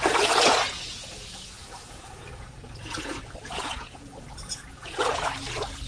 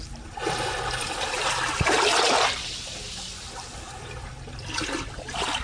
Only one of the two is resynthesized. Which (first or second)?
first